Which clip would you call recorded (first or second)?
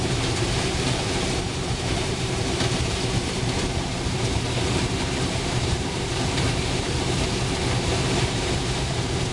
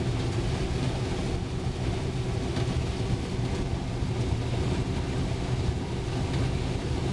second